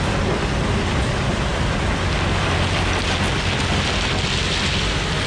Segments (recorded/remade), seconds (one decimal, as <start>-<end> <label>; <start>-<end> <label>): 0.0-5.3 recorded